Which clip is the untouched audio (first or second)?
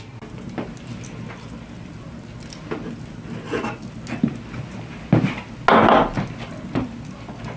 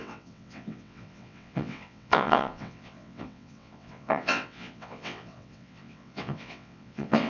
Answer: first